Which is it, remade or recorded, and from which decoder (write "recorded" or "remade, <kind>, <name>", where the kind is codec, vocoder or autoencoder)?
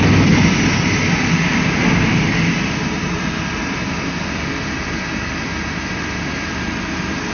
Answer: recorded